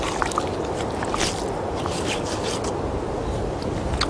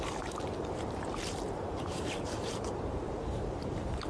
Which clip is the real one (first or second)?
first